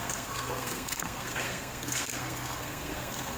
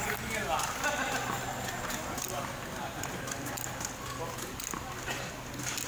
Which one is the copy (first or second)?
first